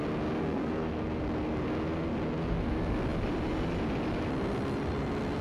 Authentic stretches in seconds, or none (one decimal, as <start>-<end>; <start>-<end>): 0.0-0.4; 1.2-5.4

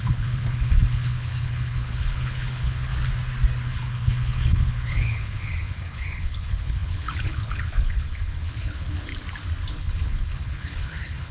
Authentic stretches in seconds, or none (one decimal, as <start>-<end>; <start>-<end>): 2.9-3.6; 9.1-9.7

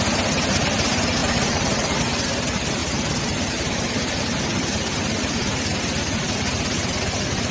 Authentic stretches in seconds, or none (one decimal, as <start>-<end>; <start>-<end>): 0.0-1.2; 2.0-7.5

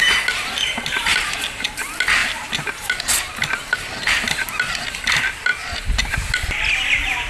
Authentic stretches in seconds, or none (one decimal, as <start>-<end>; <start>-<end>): 0.0-7.3

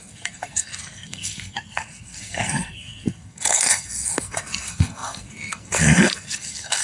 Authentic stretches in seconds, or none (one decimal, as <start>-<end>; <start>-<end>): none

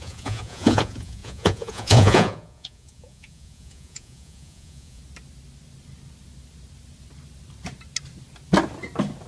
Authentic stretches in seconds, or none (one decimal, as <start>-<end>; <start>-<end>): 5.0-9.3